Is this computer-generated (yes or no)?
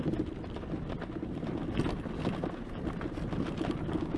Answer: no